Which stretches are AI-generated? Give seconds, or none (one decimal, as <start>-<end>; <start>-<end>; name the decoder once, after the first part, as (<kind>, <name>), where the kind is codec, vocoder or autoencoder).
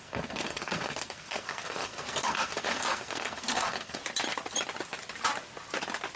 0.0-4.0 (codec, SNAC)